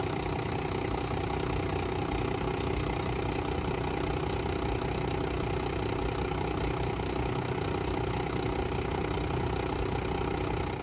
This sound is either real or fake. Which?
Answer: real